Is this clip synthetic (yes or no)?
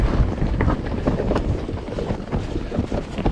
no